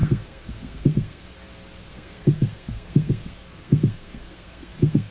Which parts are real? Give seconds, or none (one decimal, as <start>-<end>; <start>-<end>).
1.4-1.8